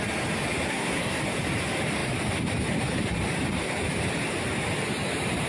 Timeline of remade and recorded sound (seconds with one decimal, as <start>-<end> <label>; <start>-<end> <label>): 0.0-0.7 recorded; 0.7-1.2 remade; 1.2-5.5 recorded